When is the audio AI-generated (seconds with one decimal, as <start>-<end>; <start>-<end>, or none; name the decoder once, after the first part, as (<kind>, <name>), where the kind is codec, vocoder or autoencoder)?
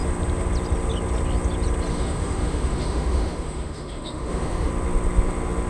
1.9-4.7 (autoencoder, DAC-VAE)